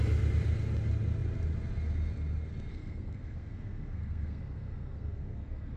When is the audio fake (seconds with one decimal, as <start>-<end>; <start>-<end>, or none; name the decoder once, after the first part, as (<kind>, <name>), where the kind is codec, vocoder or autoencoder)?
2.7-5.8 (codec, SNAC)